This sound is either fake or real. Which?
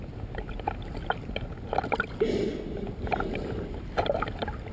real